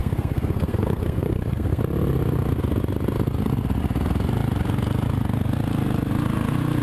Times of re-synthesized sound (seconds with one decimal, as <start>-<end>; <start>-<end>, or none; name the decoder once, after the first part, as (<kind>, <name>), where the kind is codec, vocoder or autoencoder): 0.0-1.8 (codec, SNAC)